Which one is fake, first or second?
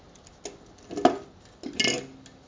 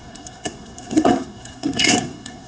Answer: second